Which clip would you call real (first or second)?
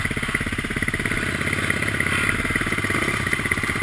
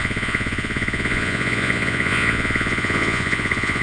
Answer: first